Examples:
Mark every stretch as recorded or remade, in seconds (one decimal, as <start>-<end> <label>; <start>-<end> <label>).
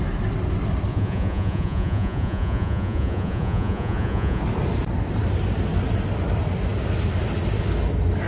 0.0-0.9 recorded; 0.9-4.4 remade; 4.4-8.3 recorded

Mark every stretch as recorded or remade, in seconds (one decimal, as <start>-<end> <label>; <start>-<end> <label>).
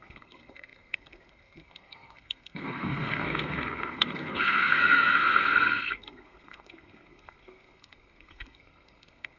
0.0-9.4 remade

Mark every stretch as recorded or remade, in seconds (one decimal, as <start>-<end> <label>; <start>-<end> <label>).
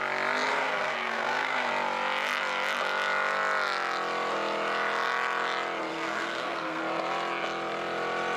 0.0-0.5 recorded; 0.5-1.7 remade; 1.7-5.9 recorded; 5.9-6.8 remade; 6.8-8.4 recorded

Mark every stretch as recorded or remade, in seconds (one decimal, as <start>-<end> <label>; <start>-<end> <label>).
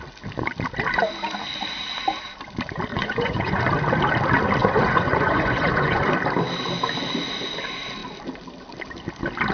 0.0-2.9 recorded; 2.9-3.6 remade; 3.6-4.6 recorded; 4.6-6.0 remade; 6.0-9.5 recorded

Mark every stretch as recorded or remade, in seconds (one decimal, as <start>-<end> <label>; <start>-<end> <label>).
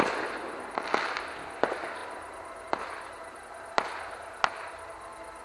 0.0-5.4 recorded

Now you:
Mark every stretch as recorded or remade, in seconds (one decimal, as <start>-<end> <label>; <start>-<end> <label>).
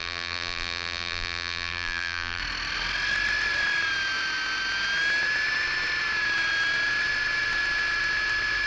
0.0-2.4 remade; 2.4-8.7 recorded